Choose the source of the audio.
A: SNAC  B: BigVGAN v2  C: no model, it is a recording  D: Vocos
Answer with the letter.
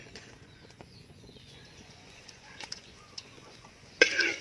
D